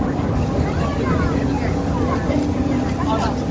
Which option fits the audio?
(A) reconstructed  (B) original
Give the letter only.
B